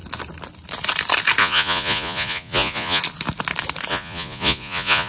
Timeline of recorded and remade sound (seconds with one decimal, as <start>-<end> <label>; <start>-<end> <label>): 0.0-1.4 recorded; 1.4-3.0 remade; 3.0-3.9 recorded; 3.9-5.1 remade